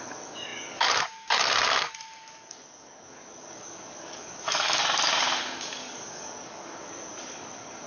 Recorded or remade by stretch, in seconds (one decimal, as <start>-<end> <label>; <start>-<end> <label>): 0.0-4.8 remade; 4.8-5.4 recorded; 5.4-7.9 remade